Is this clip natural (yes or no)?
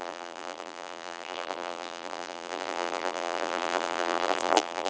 no